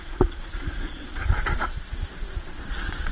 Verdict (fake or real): fake